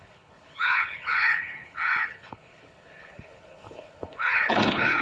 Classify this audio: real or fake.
fake